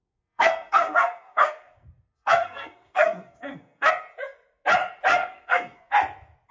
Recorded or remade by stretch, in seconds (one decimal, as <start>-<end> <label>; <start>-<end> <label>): 0.0-3.9 remade; 3.9-5.1 recorded; 5.1-5.9 remade; 5.9-6.5 recorded